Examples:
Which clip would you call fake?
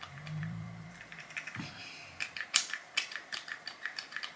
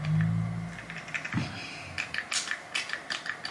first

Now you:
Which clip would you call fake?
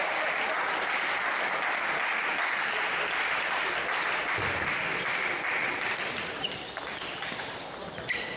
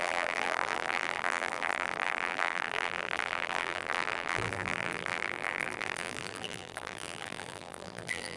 second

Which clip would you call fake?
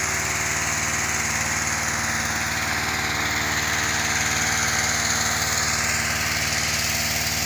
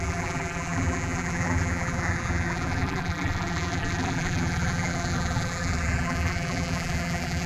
second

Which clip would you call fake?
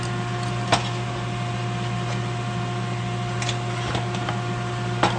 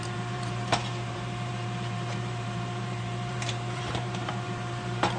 second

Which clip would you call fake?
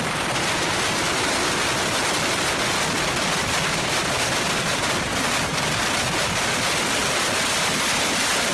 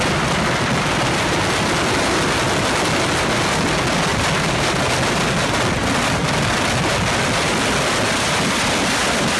first